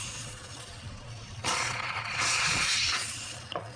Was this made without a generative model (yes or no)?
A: no